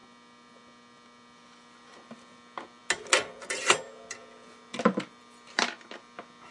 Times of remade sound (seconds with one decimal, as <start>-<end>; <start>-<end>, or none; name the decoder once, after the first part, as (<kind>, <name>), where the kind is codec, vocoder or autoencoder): none